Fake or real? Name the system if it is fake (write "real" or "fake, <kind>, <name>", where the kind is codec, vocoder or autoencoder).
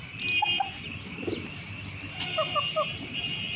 real